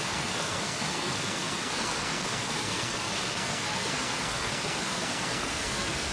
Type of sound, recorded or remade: remade